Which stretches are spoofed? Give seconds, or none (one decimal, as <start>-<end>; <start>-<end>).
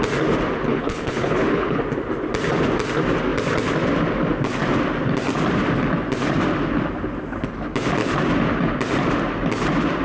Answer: 0.7-1.8